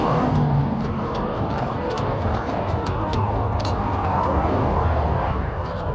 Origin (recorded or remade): remade